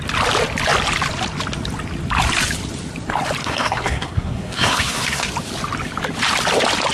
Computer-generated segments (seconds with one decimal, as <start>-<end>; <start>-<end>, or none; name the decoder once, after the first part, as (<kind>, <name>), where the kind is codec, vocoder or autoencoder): 3.4-5.3 (codec, SNAC)